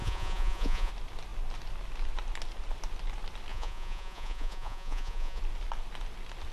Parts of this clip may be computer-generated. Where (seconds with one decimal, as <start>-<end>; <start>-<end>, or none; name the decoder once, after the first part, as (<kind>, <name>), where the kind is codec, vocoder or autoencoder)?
0.0-0.9 (vocoder, Vocos); 3.5-5.4